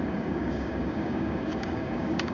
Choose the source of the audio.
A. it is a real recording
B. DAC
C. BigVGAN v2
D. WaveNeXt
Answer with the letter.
B